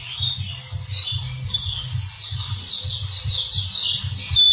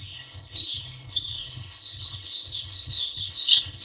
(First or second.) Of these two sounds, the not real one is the second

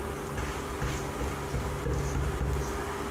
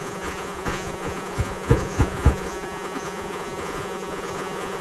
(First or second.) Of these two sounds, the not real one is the second